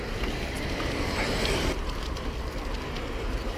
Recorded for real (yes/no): no